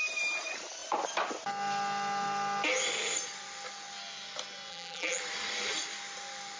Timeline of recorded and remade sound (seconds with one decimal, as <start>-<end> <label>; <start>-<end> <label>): 0.0-4.7 recorded; 4.7-5.2 remade; 5.2-6.6 recorded